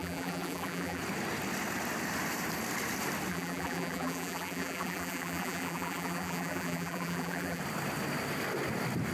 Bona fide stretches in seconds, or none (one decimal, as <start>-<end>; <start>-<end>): 1.0-3.3; 7.6-9.1